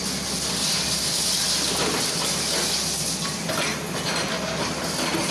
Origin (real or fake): real